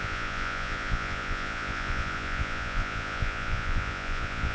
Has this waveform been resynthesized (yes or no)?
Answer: yes